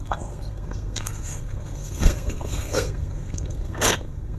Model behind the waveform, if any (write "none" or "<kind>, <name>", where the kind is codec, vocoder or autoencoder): codec, SNAC